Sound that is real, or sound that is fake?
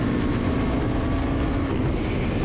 real